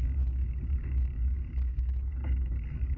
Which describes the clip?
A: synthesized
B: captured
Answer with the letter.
A